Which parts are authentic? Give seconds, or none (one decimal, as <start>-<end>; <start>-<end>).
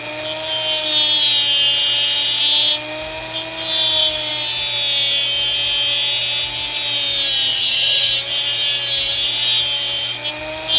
0.0-7.5; 8.1-10.8